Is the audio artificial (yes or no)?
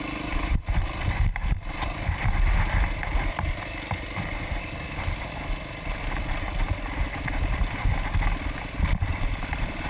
no